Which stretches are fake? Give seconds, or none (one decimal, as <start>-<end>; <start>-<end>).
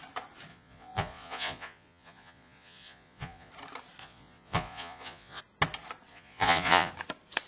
0.5-3.5; 4.0-5.4; 6.1-6.9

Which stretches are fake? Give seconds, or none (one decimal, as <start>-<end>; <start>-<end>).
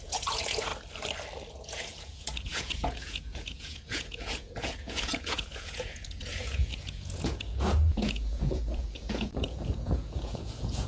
0.0-0.7; 1.5-10.9